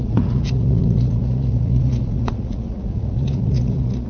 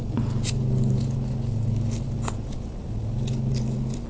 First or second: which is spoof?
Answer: first